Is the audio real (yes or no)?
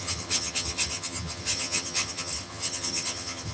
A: no